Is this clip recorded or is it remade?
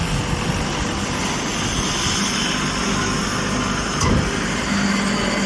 recorded